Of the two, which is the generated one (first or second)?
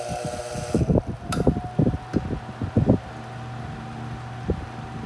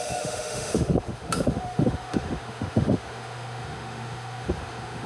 second